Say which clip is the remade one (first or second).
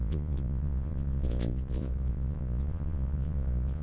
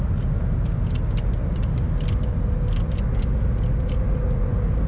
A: first